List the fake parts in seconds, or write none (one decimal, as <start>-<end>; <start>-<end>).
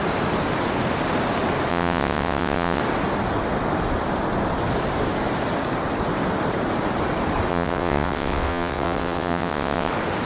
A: 1.7-2.8; 7.5-9.9